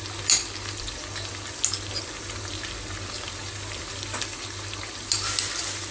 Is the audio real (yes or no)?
yes